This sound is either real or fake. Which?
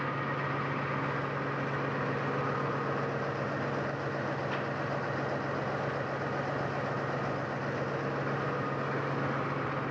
real